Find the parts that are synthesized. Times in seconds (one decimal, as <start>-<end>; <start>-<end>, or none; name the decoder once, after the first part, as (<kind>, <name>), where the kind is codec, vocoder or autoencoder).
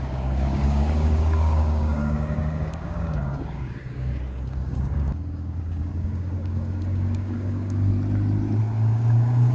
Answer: 0.0-7.9 (codec, DAC); 8.6-9.5